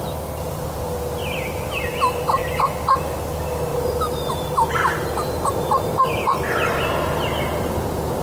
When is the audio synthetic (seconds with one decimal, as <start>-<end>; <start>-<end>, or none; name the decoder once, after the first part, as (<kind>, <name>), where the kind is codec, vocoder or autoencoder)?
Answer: 1.2-1.9 (vocoder, BigVGAN v2); 3.7-6.7